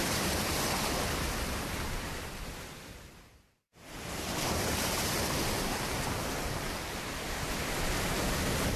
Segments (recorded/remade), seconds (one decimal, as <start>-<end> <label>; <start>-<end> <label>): 0.0-3.7 recorded; 3.7-7.5 remade; 7.5-8.8 recorded